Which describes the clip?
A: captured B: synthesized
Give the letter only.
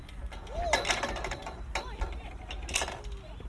A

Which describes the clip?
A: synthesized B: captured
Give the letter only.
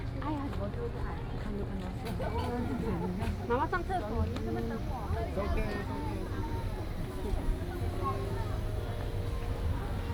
B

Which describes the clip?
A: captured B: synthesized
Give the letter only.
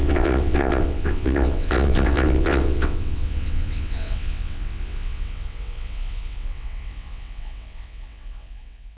B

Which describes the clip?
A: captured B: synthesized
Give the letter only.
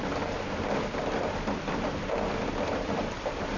A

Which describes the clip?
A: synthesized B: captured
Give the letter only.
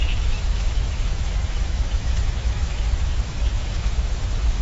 A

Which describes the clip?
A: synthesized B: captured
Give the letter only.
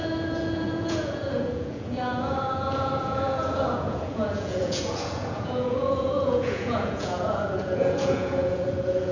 A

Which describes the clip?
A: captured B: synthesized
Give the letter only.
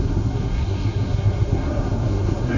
B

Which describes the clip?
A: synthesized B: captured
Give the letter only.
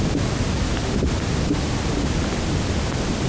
B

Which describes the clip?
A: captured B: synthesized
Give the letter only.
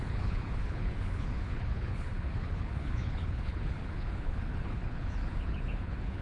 B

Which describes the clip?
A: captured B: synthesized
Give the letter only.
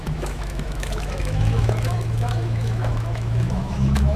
B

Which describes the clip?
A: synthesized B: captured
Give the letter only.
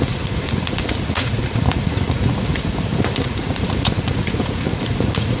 A